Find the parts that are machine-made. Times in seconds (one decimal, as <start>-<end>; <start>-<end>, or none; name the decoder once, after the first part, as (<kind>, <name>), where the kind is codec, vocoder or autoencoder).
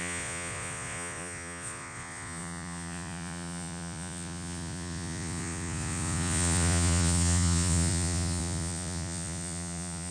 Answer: 0.0-10.1 (vocoder, Vocos)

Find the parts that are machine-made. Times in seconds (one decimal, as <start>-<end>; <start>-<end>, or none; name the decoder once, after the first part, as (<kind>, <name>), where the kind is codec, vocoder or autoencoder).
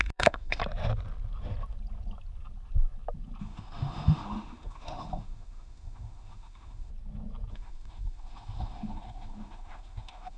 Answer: 0.0-0.6 (autoencoder, DAC-VAE); 3.4-6.9; 7.5-10.4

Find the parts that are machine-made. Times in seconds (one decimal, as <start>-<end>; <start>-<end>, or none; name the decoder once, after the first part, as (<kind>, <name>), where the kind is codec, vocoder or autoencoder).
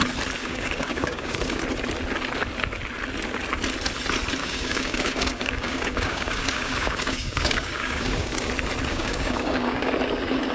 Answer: 0.4-1.6 (codec, DAC); 4.4-8.5; 8.9-9.9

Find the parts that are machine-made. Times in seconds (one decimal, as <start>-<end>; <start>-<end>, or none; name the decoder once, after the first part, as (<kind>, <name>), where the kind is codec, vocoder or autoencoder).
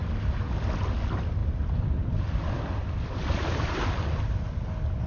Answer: none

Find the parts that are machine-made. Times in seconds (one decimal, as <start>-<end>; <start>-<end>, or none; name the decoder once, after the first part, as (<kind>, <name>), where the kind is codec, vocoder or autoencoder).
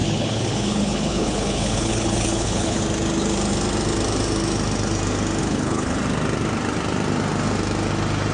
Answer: 0.0-2.8 (codec, HILCodec); 5.4-6.0